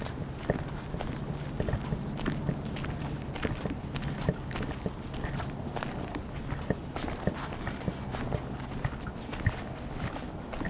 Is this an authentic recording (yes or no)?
yes